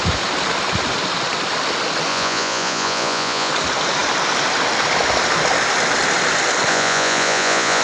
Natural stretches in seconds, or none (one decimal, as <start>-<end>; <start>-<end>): 0.0-2.1; 3.5-6.7